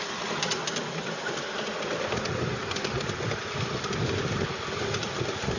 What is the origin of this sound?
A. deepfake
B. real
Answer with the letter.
B